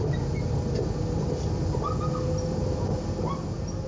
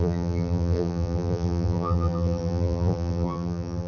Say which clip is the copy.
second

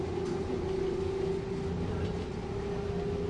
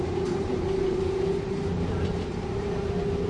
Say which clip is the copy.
second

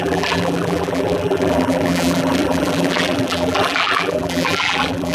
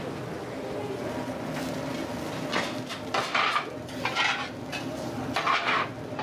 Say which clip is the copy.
first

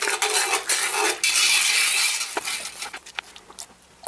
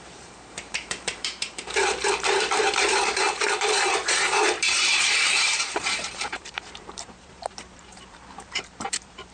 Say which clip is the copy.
second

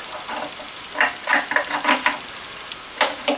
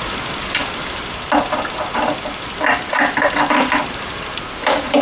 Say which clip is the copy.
second